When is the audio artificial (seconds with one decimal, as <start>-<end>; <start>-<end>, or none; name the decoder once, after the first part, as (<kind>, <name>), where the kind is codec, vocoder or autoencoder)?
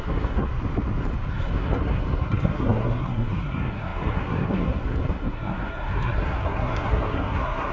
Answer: 0.0-0.5 (codec, SNAC); 1.3-7.7